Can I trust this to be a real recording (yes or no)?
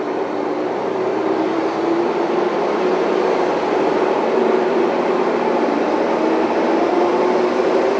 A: no